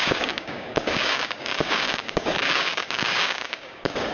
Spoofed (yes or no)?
yes